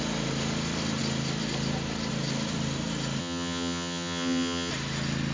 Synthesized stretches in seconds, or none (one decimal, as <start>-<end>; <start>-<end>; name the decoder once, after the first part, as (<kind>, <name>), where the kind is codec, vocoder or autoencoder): 3.2-4.7 (vocoder, HiFi-GAN)